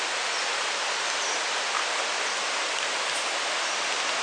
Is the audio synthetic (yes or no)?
no